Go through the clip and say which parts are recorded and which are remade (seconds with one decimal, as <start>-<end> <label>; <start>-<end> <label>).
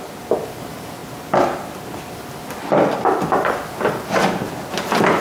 0.0-5.2 recorded